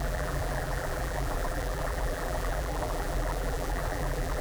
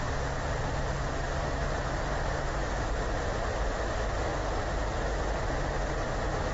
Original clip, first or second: second